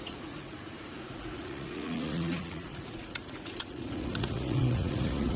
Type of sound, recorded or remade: remade